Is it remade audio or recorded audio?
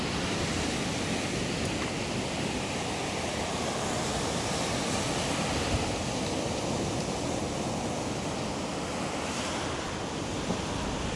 recorded